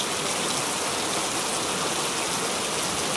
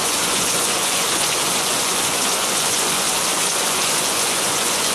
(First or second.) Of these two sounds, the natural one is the first